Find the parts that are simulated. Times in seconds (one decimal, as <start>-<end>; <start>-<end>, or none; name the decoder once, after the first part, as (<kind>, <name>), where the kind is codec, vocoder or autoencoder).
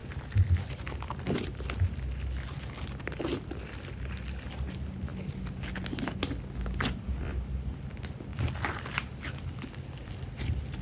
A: 8.3-8.9 (vocoder, BigVGAN v2)